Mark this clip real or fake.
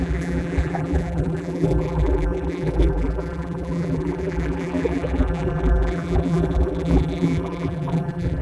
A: fake